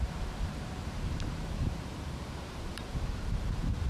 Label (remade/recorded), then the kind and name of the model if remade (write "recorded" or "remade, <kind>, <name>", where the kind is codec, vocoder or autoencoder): remade, vocoder, BigVGAN v2